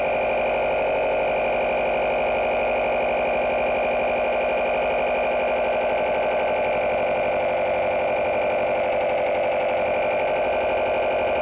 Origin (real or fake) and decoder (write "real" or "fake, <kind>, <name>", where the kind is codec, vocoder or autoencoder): real